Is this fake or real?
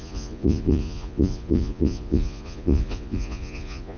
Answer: fake